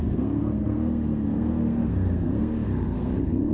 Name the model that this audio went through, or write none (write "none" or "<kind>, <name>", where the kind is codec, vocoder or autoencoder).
codec, SNAC